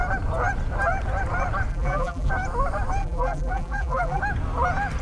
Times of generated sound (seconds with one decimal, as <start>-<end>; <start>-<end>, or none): 1.7-2.3; 3.0-4.2